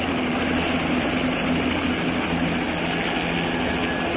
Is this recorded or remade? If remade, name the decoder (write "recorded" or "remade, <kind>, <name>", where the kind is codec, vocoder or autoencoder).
recorded